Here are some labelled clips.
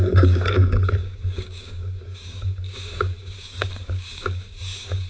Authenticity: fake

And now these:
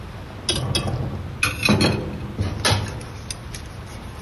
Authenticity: real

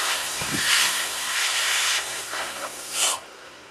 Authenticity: fake